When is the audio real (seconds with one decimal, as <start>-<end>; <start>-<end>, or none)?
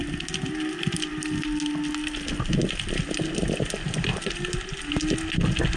0.0-5.8